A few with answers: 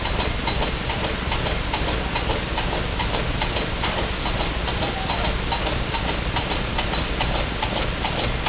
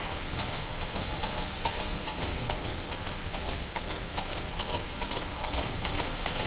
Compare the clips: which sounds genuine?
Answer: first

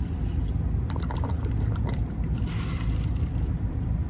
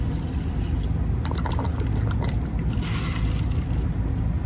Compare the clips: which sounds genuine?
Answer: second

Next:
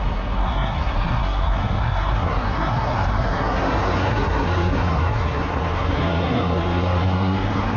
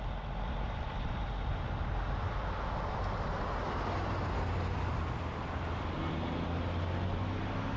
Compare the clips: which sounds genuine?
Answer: second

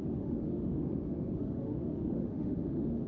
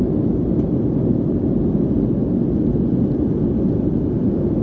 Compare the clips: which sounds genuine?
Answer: second